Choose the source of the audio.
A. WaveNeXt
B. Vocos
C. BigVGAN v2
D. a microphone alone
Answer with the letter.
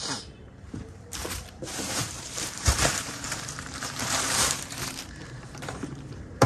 C